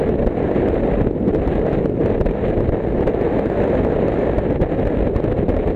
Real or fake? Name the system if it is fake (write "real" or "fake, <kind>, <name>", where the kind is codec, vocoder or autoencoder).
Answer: real